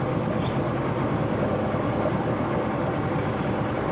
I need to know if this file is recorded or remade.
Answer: recorded